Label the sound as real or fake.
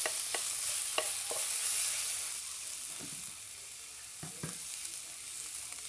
real